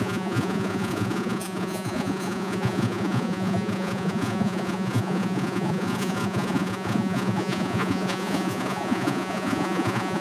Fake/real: fake